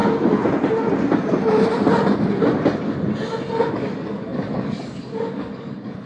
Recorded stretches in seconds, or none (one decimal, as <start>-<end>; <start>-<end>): 0.0-3.7